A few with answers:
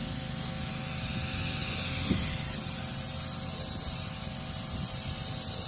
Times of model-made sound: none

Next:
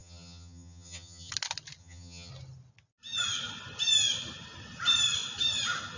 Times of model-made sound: 0.0-1.3 (vocoder, HiFi-GAN); 1.8-2.3

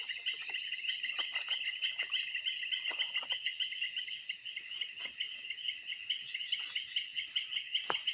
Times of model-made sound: none

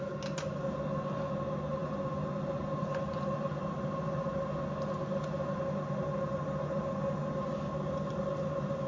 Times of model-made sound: none

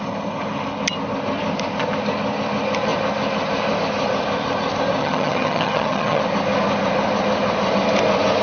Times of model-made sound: 5.0-6.2 (vocoder, HiFi-GAN)

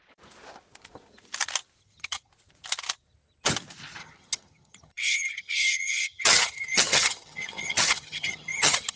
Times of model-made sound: 1.8-2.3 (vocoder, HiFi-GAN); 4.0-9.0

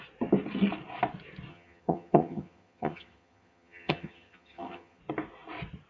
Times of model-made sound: 1.5-5.0 (vocoder, HiFi-GAN)